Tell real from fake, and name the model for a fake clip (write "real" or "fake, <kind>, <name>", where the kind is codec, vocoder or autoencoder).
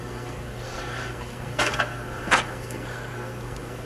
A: fake, codec, SNAC